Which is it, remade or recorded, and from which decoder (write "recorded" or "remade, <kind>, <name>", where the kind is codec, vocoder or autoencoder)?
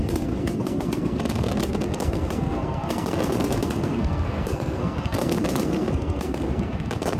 remade, codec, SNAC